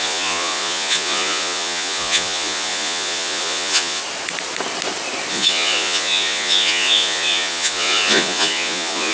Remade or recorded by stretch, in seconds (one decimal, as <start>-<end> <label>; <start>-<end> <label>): 0.0-4.0 remade; 4.0-5.3 recorded; 5.3-9.1 remade